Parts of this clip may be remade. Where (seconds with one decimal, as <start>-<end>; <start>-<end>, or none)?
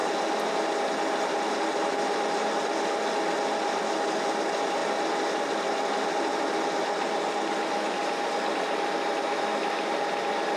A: none